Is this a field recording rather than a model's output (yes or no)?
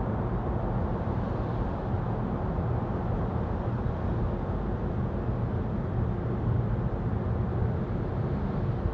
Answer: yes